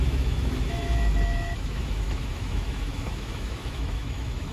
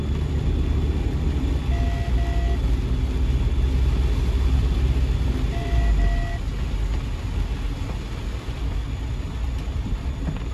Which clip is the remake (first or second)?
first